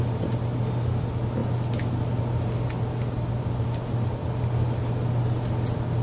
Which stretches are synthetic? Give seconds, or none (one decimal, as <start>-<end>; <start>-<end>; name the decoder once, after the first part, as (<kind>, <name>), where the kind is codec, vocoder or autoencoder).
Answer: none